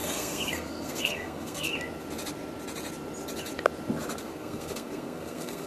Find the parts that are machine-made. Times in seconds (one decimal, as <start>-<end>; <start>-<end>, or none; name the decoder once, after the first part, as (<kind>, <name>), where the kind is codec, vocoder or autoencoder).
0.0-1.7 (codec, SNAC); 4.2-5.7